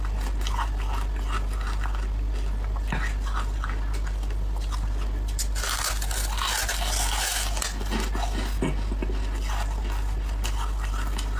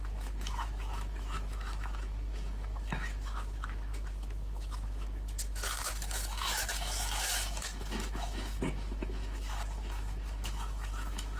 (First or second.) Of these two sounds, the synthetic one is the second